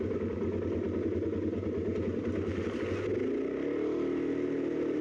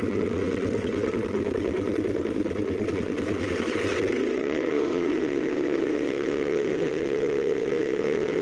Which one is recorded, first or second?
first